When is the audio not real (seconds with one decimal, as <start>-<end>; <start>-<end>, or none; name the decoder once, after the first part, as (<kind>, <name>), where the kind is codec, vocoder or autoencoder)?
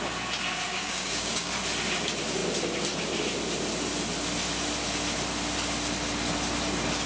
0.7-1.5 (codec, DAC)